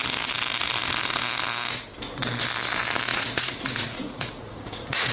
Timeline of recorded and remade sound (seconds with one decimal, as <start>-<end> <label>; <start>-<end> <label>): 0.0-3.1 recorded; 3.1-5.1 remade